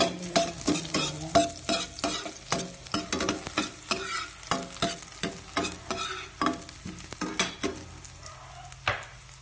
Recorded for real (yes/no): yes